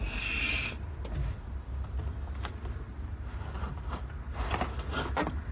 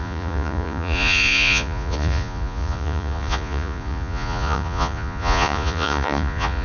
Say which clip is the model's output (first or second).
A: second